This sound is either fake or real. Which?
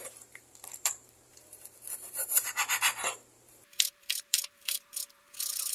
fake